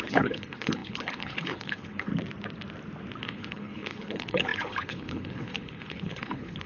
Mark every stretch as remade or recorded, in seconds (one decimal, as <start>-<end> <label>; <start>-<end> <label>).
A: 0.0-2.1 remade; 2.1-3.2 recorded; 3.2-6.7 remade